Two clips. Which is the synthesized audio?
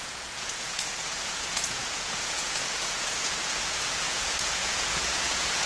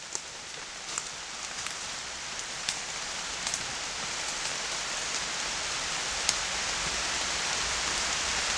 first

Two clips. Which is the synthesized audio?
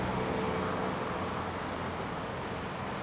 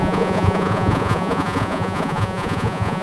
second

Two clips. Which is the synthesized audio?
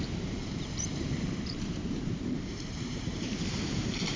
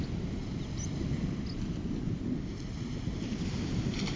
first